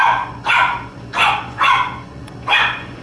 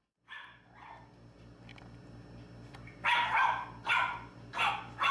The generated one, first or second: first